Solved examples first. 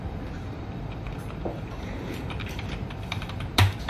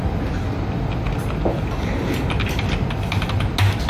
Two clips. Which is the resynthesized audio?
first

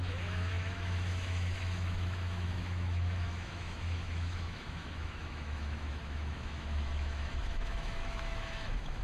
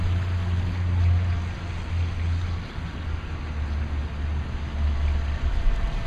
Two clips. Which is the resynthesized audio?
first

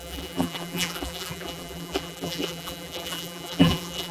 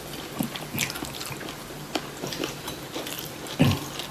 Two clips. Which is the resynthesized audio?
first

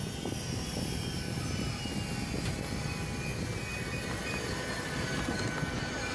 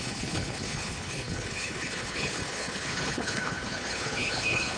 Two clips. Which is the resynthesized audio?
second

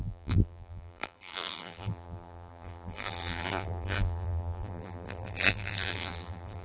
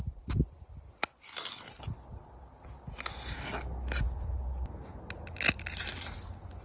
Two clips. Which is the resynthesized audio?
first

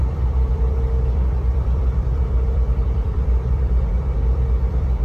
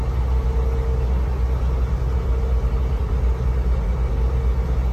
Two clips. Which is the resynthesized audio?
first